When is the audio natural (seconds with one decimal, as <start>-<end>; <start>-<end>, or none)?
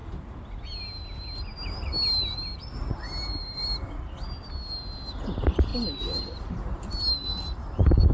0.0-8.1